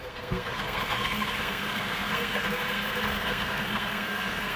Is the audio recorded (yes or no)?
no